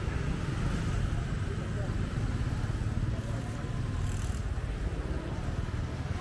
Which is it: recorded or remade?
recorded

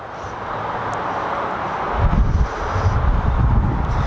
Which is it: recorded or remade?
recorded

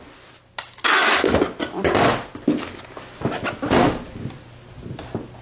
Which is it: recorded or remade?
recorded